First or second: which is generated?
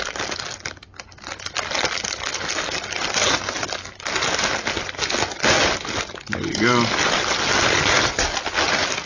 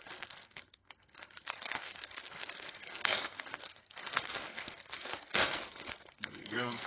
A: second